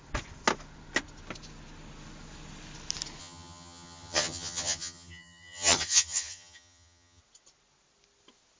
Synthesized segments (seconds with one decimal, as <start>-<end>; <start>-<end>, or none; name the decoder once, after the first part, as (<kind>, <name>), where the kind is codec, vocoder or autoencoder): 3.2-7.2 (vocoder, HiFi-GAN)